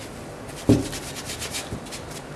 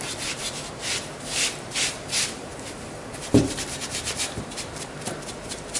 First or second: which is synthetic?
second